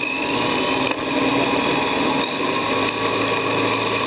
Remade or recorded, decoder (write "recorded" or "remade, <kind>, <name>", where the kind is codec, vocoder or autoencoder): recorded